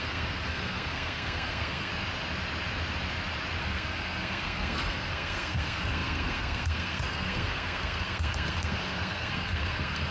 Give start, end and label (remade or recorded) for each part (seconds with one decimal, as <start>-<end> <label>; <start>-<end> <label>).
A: 0.0-1.9 remade; 1.9-3.6 recorded; 3.6-10.1 remade